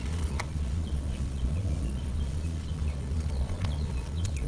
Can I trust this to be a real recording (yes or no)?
no